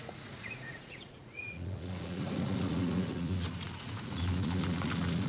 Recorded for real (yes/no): no